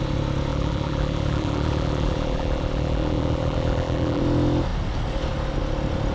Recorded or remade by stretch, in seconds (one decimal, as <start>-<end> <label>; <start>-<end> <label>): 0.0-0.5 recorded; 0.5-4.2 remade; 4.2-6.1 recorded